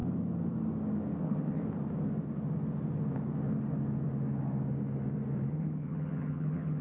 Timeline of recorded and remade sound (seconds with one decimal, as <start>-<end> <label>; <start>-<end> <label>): 0.0-1.2 recorded; 1.2-1.6 remade; 1.6-5.5 recorded; 5.5-6.8 remade